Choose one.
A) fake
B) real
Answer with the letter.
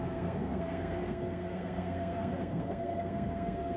A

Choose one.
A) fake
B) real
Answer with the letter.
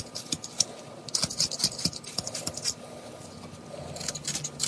B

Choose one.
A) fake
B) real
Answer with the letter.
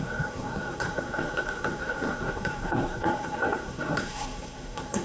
A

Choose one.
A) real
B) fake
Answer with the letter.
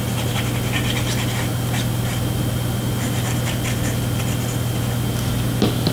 A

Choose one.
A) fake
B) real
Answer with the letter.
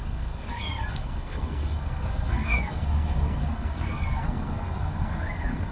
A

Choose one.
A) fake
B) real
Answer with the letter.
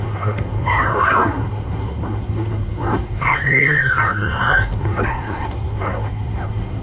A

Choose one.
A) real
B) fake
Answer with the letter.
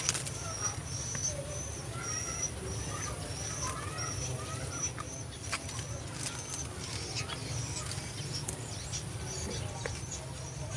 A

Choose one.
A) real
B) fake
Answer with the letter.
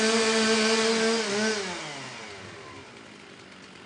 A